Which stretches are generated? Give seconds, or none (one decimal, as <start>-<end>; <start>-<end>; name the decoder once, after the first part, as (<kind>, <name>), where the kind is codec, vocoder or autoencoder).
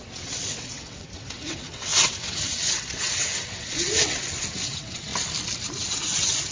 0.0-5.1 (vocoder, WaveNeXt); 5.7-6.5